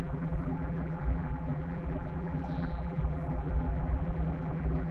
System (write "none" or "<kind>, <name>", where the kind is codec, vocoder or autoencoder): vocoder, BigVGAN v2